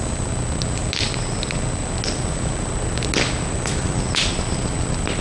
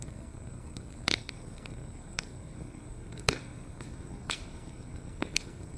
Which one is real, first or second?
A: first